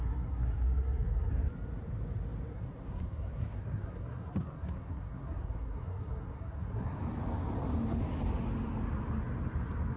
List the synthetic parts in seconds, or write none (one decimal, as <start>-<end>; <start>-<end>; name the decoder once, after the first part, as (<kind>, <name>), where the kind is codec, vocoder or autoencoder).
0.0-1.3 (codec, SNAC); 2.5-7.0